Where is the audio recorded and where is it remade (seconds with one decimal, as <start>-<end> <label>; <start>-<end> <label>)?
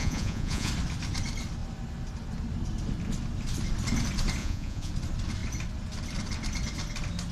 0.0-0.7 remade; 0.7-4.4 recorded; 4.4-4.9 remade; 4.9-7.3 recorded